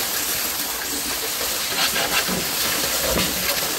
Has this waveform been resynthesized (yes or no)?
no